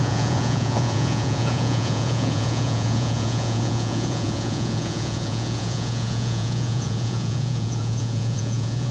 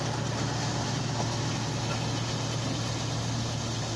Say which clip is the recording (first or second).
second